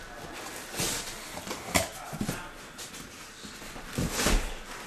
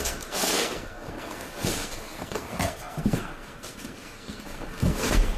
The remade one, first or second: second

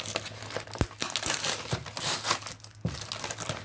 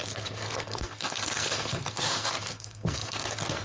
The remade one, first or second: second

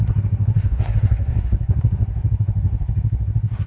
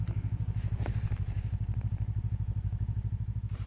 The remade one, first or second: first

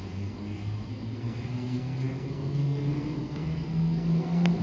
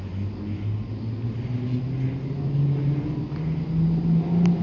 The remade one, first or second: first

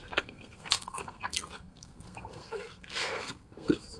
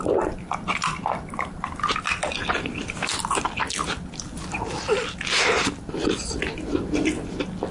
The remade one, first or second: first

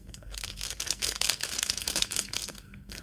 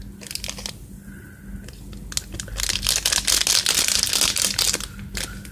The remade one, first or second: first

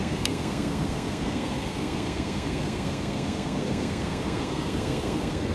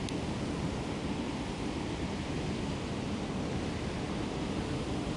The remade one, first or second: first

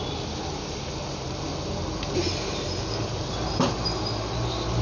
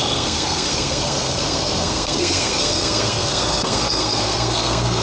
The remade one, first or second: second